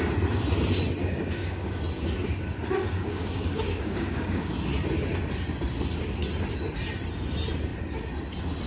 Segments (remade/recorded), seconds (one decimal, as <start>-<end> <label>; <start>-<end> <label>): 0.0-1.0 recorded; 1.0-1.8 remade; 1.8-2.8 recorded; 2.8-4.5 remade; 4.5-8.7 recorded